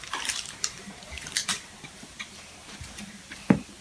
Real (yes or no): no